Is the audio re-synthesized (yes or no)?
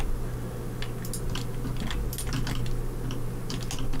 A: no